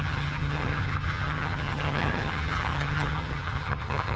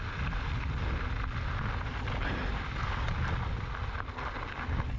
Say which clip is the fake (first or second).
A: first